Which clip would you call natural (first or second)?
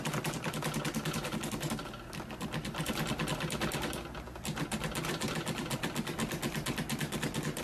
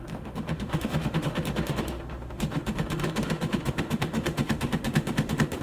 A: first